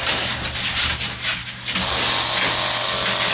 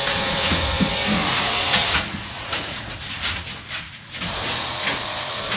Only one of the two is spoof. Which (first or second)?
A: second